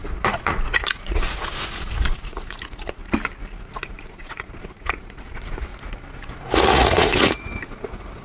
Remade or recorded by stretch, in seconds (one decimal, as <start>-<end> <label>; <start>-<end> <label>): 0.0-3.0 remade; 3.0-3.6 recorded; 3.6-5.7 remade; 5.7-6.3 recorded; 6.3-8.2 remade